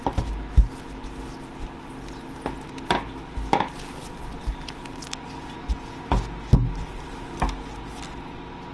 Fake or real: real